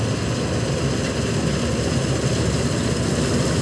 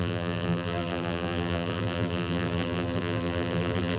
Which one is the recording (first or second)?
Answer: first